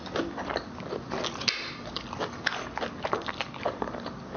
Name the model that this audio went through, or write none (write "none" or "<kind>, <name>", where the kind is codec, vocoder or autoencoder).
none